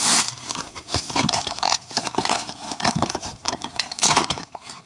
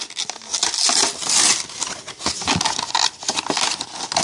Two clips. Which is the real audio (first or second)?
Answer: second